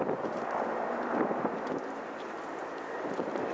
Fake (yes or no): no